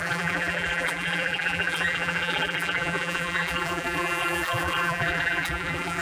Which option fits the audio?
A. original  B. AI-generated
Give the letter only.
B